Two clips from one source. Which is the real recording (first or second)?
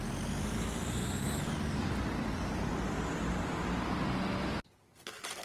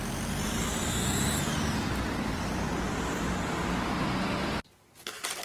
first